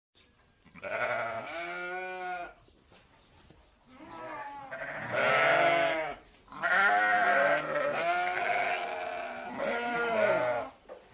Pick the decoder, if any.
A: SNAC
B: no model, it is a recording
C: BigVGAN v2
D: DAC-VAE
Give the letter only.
B